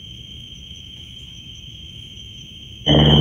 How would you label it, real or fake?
fake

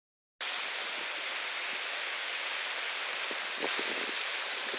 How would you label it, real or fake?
real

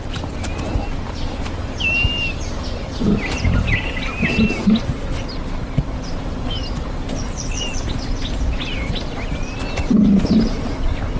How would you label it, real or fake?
real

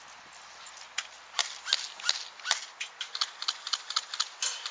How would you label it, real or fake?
real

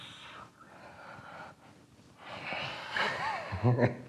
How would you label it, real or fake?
real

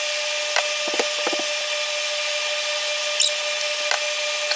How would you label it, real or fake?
real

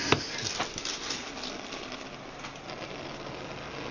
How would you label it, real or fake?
real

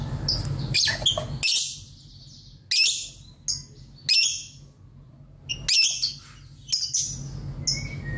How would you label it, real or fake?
real